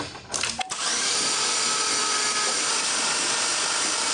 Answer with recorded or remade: recorded